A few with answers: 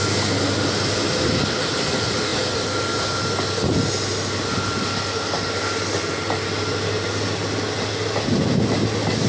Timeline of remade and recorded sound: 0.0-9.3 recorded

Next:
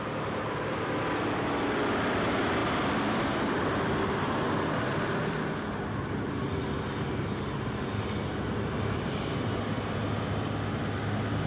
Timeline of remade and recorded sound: 0.0-2.6 recorded; 2.6-3.2 remade; 3.2-11.5 recorded

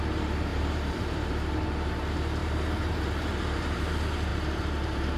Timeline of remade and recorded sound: 0.0-0.5 recorded; 0.5-1.3 remade; 1.3-2.4 recorded; 2.4-3.9 remade; 3.9-4.3 recorded; 4.3-5.2 remade

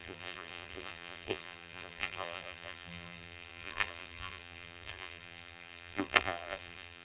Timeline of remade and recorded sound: 0.0-7.0 remade